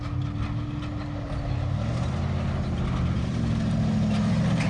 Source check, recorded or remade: recorded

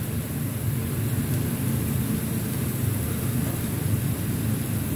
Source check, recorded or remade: remade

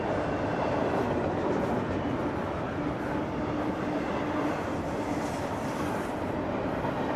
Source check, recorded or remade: remade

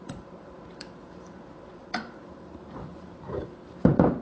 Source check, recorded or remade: remade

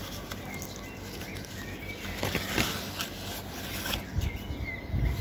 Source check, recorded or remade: recorded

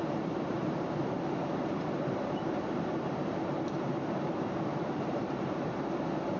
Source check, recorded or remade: remade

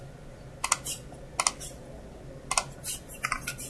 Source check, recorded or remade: recorded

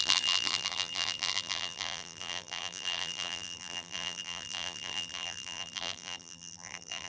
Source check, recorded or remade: remade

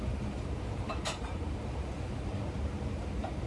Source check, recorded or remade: remade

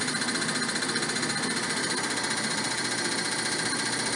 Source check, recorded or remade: remade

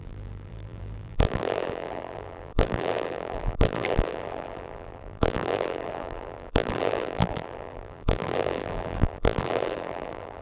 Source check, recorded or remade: remade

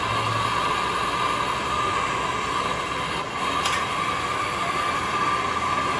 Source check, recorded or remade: recorded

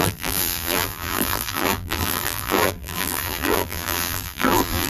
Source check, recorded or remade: remade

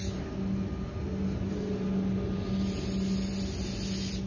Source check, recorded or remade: recorded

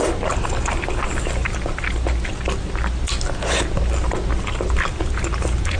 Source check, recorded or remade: recorded